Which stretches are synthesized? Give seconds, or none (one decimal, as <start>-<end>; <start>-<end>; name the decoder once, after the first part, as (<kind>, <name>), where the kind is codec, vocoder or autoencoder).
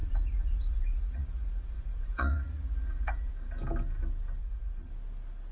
0.0-3.3 (vocoder, Vocos); 4.4-4.9